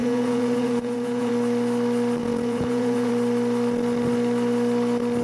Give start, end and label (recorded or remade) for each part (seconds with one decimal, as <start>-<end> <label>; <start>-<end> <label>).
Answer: 0.0-1.3 remade; 1.3-2.2 recorded; 2.2-3.1 remade; 3.1-5.2 recorded